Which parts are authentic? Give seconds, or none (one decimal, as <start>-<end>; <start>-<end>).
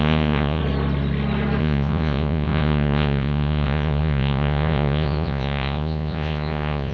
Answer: 0.6-1.6